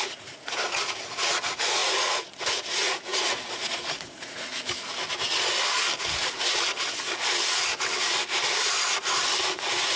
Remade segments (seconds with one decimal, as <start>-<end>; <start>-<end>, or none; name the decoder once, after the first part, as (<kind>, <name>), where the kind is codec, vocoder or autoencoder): 0.0-4.5 (vocoder, Vocos); 9.5-10.0